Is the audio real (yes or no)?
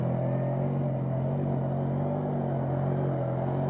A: yes